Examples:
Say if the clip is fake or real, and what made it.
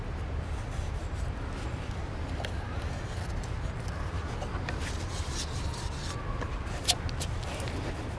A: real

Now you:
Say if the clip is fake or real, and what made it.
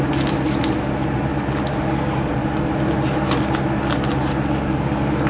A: real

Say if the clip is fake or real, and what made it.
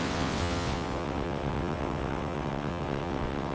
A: fake, vocoder, WaveNeXt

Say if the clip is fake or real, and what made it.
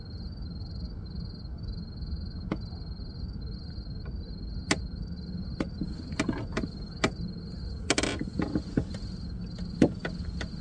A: real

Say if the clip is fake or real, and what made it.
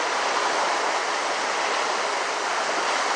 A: real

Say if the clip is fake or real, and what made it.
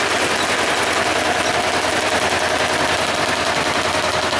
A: real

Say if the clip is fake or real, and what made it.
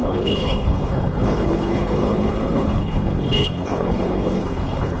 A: fake, codec, HILCodec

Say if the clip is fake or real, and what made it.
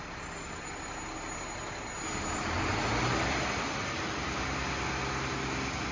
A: real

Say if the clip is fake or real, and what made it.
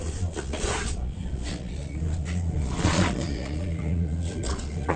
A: fake, vocoder, Vocos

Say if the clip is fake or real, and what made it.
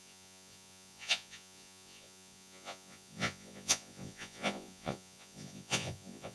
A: fake, vocoder, Vocos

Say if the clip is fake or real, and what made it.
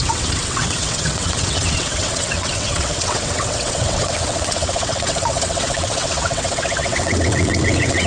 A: fake, vocoder, WaveNeXt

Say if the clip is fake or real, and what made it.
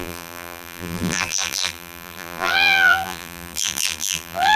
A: fake, vocoder, BigVGAN v2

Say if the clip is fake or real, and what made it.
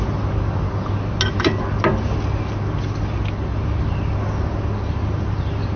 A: real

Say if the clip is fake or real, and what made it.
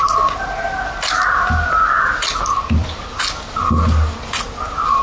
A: real